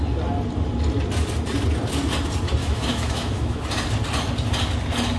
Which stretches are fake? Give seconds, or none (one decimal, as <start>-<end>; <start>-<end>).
2.6-3.6